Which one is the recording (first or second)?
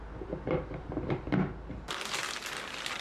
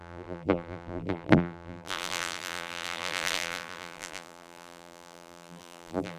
first